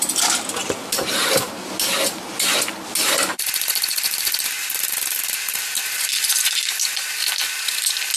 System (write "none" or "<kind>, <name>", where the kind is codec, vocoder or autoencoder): none